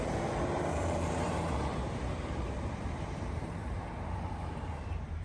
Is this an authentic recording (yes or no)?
no